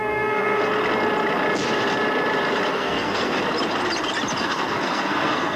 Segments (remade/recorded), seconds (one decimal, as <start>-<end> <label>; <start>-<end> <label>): 0.0-0.6 remade; 0.6-2.7 recorded; 2.7-3.4 remade; 3.4-4.4 recorded; 4.4-5.6 remade